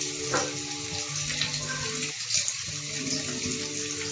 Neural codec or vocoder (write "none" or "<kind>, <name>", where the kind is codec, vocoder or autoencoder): none